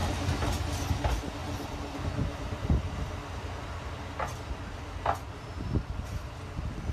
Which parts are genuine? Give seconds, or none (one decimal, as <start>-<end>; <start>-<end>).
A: 0.0-6.9